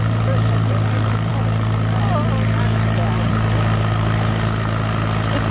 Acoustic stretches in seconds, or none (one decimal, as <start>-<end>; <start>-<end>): 0.0-5.5